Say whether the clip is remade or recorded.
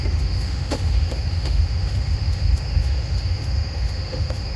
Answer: remade